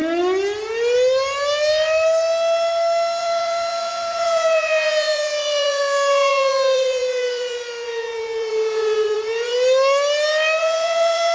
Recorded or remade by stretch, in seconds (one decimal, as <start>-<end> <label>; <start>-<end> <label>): 0.0-3.2 recorded; 3.2-9.5 remade; 9.5-10.6 recorded; 10.6-11.3 remade